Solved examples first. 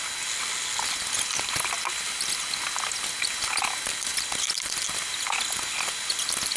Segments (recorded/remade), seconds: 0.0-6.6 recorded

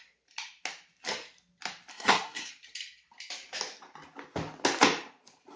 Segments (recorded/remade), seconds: 0.0-1.9 recorded; 1.9-2.5 remade; 2.5-5.6 recorded

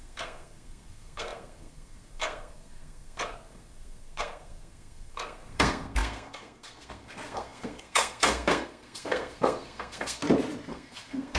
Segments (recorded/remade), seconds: 0.0-10.2 remade; 10.2-10.7 recorded; 10.7-11.4 remade

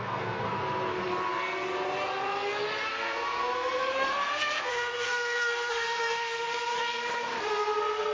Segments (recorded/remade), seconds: 0.0-0.5 remade; 0.5-2.9 recorded; 2.9-6.7 remade; 6.7-7.4 recorded; 7.4-8.1 remade

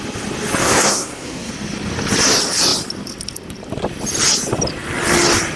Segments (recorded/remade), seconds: 0.0-0.6 recorded; 0.6-1.5 remade; 1.5-5.6 recorded

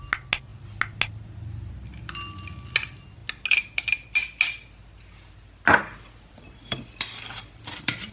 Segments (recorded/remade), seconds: 0.0-8.1 recorded

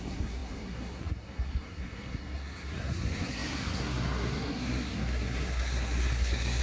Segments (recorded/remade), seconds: 0.0-6.6 remade

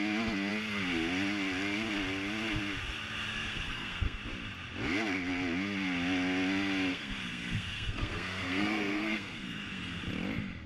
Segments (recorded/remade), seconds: 0.0-3.3 recorded; 3.3-4.2 remade; 4.2-6.9 recorded; 6.9-10.0 remade; 10.0-10.7 recorded